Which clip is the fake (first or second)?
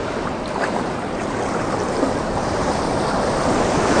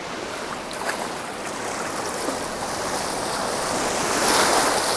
first